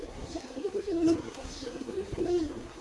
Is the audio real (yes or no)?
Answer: no